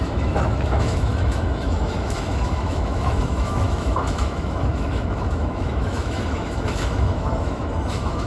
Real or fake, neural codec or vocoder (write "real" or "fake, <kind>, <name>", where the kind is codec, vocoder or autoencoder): fake, autoencoder, DAC-VAE